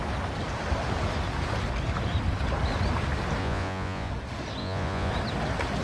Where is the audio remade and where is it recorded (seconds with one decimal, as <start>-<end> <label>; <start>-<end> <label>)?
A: 0.0-3.4 recorded; 3.4-4.1 remade; 4.1-4.6 recorded; 4.6-5.1 remade; 5.1-5.8 recorded